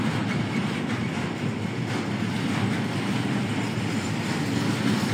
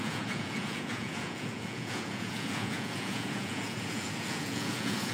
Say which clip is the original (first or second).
first